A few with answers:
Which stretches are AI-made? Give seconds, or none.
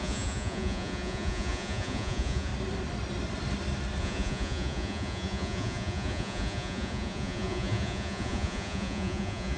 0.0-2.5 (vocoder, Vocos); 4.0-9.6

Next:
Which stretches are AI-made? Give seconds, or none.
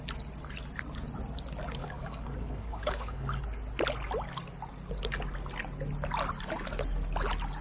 1.8-3.4 (codec, DAC)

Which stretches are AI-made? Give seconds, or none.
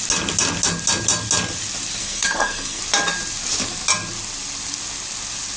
2.0-2.8 (codec, SNAC)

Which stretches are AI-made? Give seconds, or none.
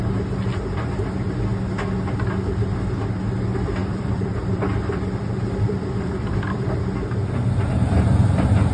3.8-6.8 (vocoder, BigVGAN v2)